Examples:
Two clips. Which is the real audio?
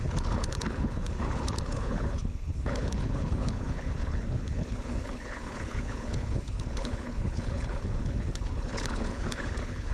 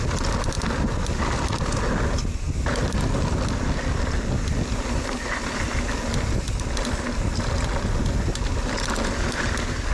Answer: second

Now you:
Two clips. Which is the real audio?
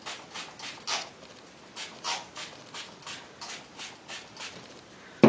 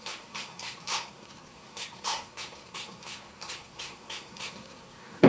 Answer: first